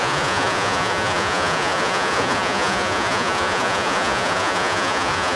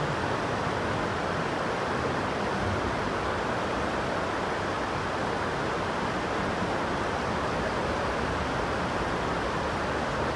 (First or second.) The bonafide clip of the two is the second